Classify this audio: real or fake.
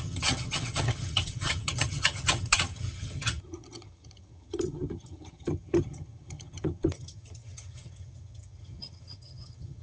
fake